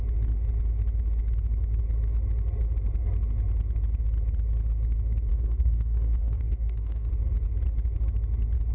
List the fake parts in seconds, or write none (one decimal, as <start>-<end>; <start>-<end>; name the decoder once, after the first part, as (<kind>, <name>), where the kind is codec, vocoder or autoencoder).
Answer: 5.3-7.1 (codec, DAC)